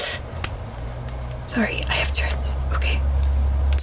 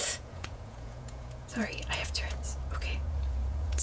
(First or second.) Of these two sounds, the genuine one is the first